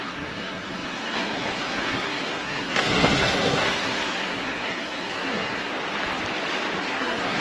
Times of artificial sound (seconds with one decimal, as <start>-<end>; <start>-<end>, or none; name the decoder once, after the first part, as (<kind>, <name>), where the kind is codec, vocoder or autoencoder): 0.0-5.7 (codec, SNAC); 6.8-7.4

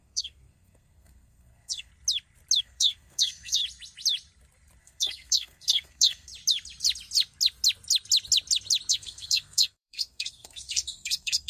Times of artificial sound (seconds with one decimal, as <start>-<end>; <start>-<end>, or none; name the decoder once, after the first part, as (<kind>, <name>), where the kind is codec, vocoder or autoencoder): 0.0-1.9 (codec, SNAC); 2.6-3.6; 4.8-6.3; 8.9-11.5